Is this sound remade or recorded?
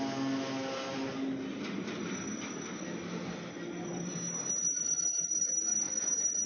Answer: recorded